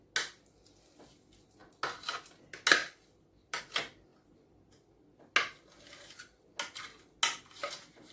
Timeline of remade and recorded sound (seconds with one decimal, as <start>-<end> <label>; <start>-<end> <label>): 0.0-2.8 recorded; 2.8-3.6 remade; 3.6-8.1 recorded